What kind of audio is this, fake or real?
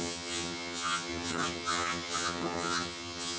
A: fake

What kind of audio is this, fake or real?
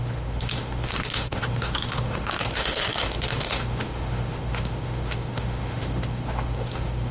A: fake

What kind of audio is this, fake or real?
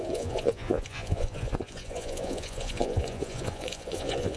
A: fake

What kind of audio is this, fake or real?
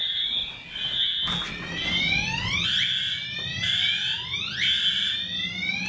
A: real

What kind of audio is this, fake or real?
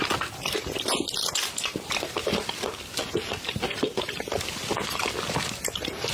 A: real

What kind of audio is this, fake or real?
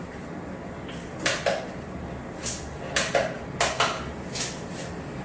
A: real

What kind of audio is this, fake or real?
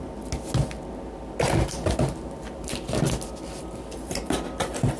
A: real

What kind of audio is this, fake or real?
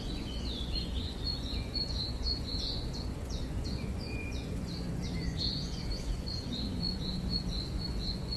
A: fake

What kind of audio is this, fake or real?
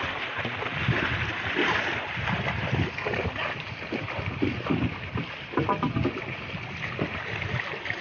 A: real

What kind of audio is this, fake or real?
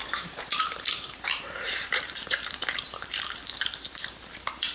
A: fake